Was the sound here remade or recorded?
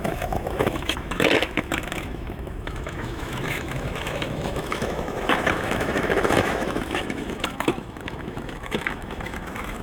remade